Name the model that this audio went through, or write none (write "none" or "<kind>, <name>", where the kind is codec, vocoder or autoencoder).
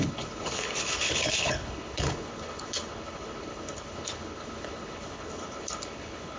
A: codec, HILCodec